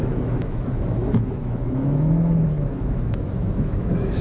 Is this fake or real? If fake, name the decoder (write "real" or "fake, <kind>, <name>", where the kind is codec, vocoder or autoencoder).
fake, autoencoder, DAC-VAE